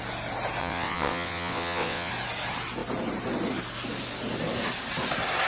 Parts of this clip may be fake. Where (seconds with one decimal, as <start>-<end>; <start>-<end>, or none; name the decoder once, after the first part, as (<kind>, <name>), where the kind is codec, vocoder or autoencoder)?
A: 0.6-2.1 (vocoder, WaveNeXt)